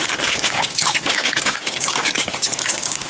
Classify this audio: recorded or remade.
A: remade